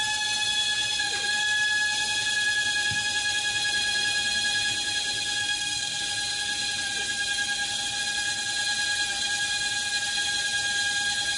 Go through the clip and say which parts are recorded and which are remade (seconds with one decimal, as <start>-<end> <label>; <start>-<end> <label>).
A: 0.0-5.4 recorded; 5.4-6.0 remade; 6.0-11.4 recorded